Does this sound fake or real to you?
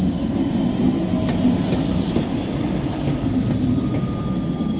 real